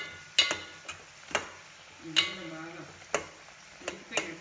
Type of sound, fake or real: real